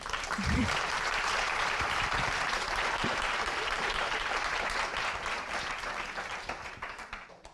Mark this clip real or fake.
fake